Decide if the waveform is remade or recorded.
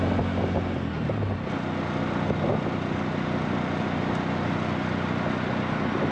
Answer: recorded